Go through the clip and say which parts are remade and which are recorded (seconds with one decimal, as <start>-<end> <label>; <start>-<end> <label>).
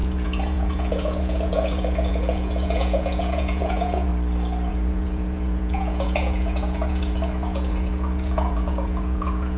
0.0-4.1 remade; 4.1-4.7 recorded; 4.7-9.6 remade